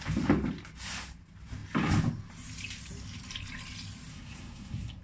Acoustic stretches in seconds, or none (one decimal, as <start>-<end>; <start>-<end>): 0.0-4.1

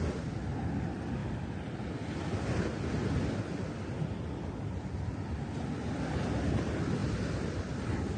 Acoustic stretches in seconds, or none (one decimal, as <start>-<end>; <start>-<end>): 0.0-8.2

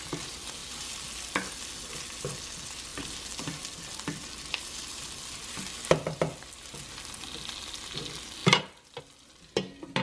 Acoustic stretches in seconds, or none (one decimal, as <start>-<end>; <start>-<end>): 0.0-10.0

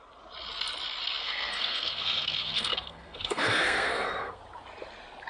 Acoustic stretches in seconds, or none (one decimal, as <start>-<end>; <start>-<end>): 0.0-1.2; 4.4-5.3

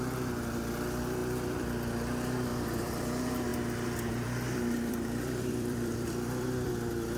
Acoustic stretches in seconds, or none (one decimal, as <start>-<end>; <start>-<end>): 0.0-1.2; 1.7-2.5; 3.1-3.5; 6.7-7.2

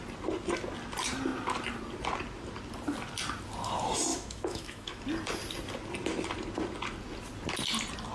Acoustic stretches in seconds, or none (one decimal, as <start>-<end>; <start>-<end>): 0.0-4.1; 5.0-8.1